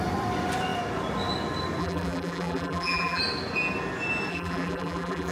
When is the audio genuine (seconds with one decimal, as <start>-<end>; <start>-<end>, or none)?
0.0-1.8; 3.2-4.3